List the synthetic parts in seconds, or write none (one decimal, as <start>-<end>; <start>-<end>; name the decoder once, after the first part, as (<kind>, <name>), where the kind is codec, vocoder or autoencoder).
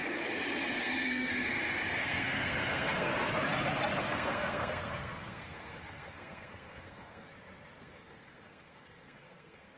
0.8-1.3 (codec, SNAC); 2.0-3.1; 4.0-7.3; 7.8-9.8